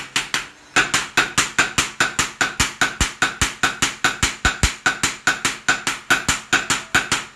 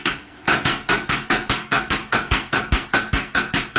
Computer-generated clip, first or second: second